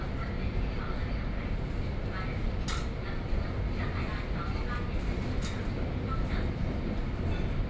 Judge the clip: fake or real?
real